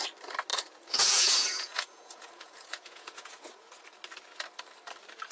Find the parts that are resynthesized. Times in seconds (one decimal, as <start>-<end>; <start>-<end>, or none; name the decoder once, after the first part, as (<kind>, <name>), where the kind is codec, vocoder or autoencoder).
0.5-3.7 (vocoder, Vocos)